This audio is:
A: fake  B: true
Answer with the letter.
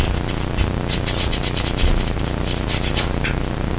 B